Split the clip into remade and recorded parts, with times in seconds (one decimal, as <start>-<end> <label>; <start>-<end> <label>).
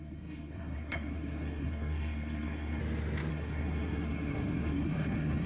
0.0-2.8 remade; 2.8-3.3 recorded; 3.3-5.5 remade